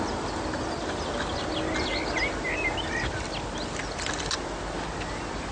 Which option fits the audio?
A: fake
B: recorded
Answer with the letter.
B